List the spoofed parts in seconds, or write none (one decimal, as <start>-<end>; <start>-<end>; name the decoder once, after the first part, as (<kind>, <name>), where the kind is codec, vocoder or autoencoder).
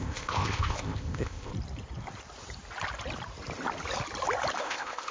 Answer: 0.0-1.5 (codec, ZipCodec); 4.6-5.1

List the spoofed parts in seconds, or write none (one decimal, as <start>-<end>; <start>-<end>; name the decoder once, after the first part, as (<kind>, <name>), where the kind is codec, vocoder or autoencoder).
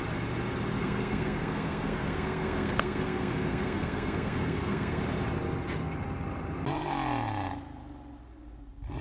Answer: 0.8-5.0 (codec, SNAC)